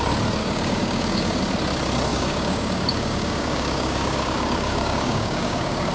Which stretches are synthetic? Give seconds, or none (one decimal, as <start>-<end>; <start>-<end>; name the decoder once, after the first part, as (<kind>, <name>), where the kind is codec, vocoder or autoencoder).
0.4-1.4 (codec, DAC); 2.1-5.9